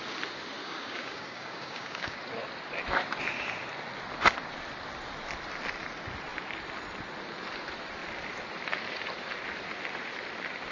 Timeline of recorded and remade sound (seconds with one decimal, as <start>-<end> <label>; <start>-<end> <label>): 0.0-0.6 recorded; 0.6-2.2 remade; 2.2-10.7 recorded